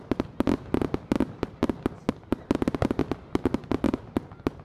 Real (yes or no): yes